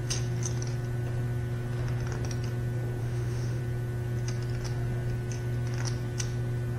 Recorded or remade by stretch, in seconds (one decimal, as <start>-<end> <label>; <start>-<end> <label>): 0.0-3.0 recorded; 3.0-3.6 remade; 3.6-6.8 recorded